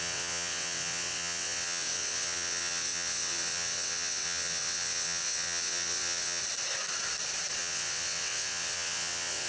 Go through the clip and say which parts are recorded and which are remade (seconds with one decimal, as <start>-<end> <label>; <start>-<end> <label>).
0.0-6.4 remade; 6.4-7.6 recorded; 7.6-9.5 remade